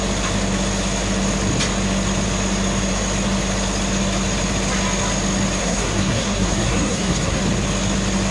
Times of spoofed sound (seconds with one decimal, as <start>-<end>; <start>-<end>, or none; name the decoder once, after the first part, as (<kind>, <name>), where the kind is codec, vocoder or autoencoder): 5.6-7.4 (codec, SNAC)

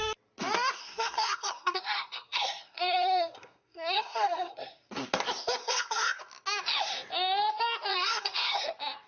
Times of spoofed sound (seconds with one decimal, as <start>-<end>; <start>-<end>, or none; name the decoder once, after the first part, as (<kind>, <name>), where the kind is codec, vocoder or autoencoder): 0.8-4.9 (codec, SNAC); 5.6-6.2; 7.9-8.6